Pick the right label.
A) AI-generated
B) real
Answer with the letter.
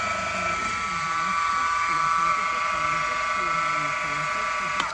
B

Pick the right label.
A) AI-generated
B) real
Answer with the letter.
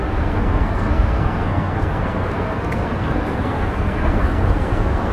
A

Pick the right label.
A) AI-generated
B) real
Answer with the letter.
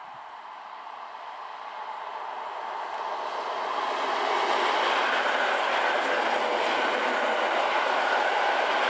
B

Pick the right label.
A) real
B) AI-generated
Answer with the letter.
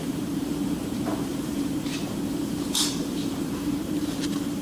B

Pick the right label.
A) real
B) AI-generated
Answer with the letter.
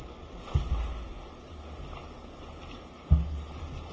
A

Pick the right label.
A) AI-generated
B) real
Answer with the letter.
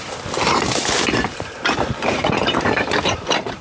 A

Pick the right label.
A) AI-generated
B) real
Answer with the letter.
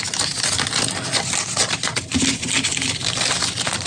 B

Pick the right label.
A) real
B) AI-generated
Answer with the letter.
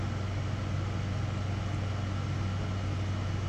A